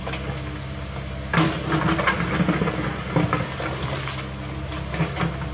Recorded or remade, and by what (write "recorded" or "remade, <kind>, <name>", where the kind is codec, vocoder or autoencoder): recorded